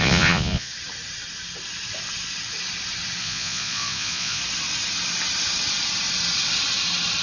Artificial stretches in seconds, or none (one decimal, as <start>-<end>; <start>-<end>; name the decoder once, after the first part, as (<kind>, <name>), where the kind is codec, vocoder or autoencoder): 0.0-0.7 (vocoder, Vocos); 3.2-4.4